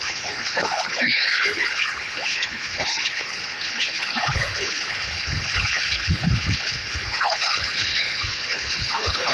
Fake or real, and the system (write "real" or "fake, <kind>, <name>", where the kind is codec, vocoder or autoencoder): fake, codec, HILCodec